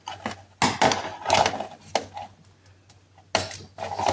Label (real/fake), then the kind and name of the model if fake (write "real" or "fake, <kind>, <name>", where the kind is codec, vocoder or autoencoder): real